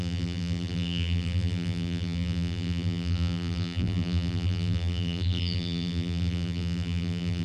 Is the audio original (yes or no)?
no